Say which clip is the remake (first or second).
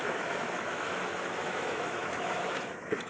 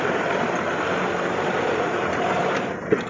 first